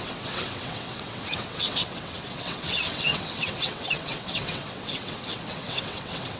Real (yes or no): no